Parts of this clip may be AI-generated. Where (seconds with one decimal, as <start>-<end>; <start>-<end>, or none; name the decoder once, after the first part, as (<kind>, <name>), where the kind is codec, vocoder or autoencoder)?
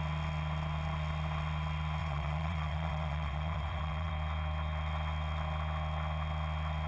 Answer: 2.0-4.1 (vocoder, WaveNeXt)